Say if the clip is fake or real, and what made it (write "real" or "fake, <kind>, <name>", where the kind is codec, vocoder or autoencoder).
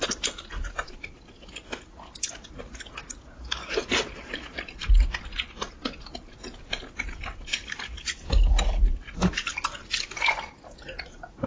real